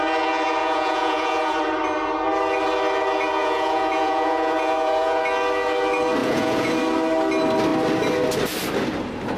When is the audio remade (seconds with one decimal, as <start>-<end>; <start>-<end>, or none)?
0.6-1.6; 3.4-5.2; 6.2-6.7

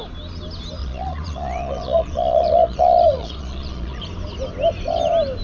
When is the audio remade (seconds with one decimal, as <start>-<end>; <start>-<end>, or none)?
0.8-4.0

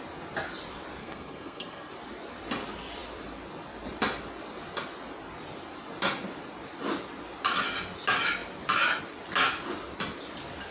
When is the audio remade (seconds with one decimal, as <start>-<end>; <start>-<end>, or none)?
1.0-1.9

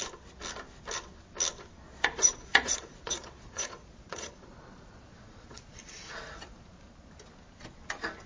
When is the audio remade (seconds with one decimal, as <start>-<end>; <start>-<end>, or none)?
1.9-6.9

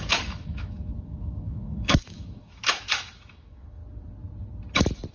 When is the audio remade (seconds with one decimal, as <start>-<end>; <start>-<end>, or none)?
0.0-3.8